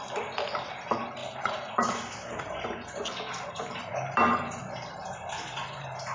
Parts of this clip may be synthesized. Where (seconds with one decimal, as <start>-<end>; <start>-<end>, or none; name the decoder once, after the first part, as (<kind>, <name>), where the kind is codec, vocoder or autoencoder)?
0.0-1.2 (vocoder, BigVGAN v2); 3.5-3.9; 4.6-6.1